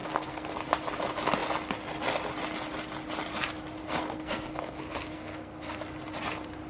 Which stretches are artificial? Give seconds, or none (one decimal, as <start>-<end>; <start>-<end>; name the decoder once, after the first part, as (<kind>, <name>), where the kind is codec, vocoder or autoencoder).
0.0-0.5 (codec, SNAC); 3.8-5.8